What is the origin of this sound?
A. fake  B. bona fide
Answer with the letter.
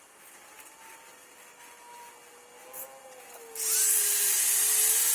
B